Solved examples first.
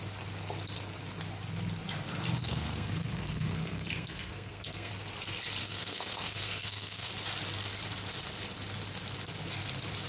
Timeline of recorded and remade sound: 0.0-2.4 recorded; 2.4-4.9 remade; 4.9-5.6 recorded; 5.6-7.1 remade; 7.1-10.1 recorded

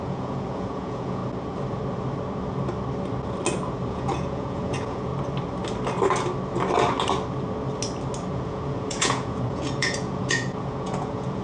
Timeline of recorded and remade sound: 0.0-1.2 remade; 1.2-3.9 recorded; 3.9-5.1 remade; 5.1-8.3 recorded; 8.3-11.4 remade

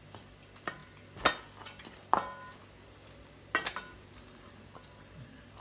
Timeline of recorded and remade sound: 0.0-5.6 recorded

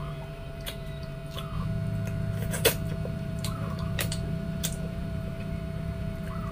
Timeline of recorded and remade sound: 0.0-1.2 remade; 1.2-2.5 recorded; 2.5-6.5 remade

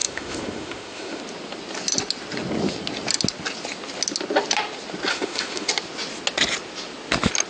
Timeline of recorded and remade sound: 0.0-1.2 remade; 1.2-5.1 recorded; 5.1-5.7 remade; 5.7-7.5 recorded

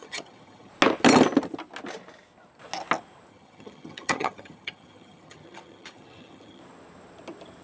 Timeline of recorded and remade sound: 0.0-0.7 remade; 0.7-3.3 recorded; 3.3-6.6 remade; 6.6-7.6 recorded

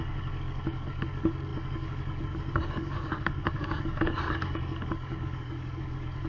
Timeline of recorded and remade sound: 0.0-6.3 remade